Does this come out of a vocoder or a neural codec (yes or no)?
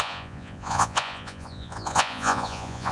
yes